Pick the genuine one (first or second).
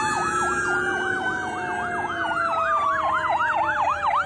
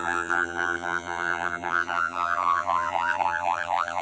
first